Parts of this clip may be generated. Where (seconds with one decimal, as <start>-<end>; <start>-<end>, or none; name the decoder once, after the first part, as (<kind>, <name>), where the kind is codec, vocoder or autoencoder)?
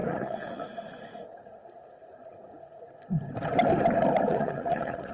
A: 0.0-2.8 (vocoder, Vocos); 4.3-5.1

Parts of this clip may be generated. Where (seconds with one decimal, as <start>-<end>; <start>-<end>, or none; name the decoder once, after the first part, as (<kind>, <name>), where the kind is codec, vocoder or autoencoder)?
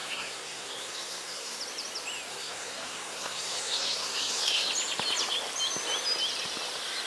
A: 0.0-1.6 (codec, SNAC); 2.3-4.7